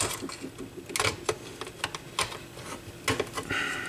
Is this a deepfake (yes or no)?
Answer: no